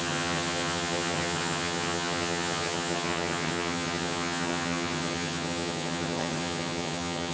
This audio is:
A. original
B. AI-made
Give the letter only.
B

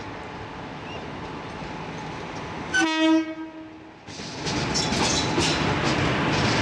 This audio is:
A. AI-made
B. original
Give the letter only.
B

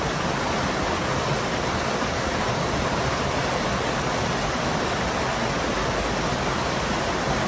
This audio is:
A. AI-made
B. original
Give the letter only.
B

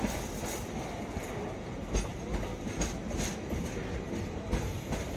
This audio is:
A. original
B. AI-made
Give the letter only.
A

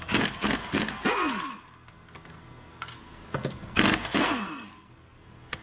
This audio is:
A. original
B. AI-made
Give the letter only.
B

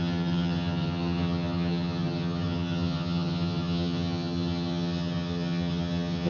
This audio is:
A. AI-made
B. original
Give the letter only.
A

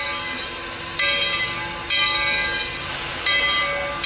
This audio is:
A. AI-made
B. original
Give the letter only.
B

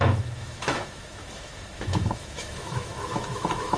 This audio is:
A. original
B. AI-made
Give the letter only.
B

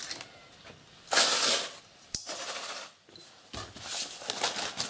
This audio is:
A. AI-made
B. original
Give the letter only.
B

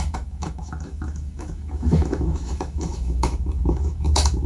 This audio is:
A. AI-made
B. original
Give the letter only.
A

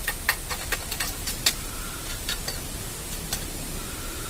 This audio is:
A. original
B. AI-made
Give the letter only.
B